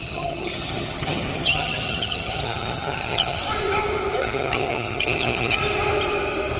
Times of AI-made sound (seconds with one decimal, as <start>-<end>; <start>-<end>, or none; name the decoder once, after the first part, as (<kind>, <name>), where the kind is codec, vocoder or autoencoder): 0.0-3.4 (vocoder, HiFi-GAN); 4.2-5.6